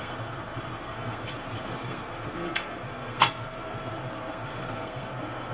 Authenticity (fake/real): fake